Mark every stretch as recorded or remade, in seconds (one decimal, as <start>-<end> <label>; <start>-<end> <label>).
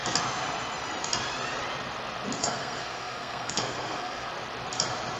0.0-2.4 recorded; 2.4-4.3 remade; 4.3-5.2 recorded